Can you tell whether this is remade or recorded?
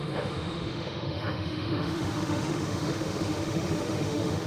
remade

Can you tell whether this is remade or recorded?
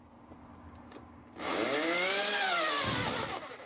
recorded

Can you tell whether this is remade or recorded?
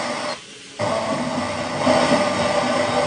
recorded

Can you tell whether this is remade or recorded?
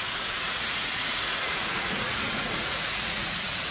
remade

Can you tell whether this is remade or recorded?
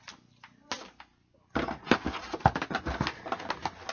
recorded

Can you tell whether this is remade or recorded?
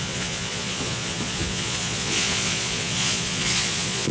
remade